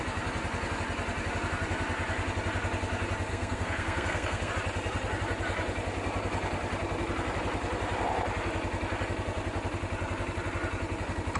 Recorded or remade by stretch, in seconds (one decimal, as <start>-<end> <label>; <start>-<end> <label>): 0.0-3.3 recorded; 3.3-4.5 remade; 4.5-11.4 recorded